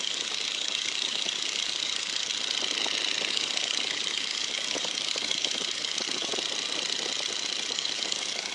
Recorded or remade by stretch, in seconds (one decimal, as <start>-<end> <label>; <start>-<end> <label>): 0.0-2.3 remade; 2.3-3.3 recorded; 3.3-6.3 remade; 6.3-7.7 recorded; 7.7-8.5 remade